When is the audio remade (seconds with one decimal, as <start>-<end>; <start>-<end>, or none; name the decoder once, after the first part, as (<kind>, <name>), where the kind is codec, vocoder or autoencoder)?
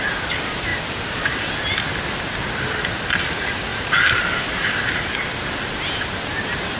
none